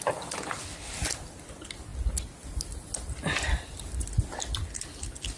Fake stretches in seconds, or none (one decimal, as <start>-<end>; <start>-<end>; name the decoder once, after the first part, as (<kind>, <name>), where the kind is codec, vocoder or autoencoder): none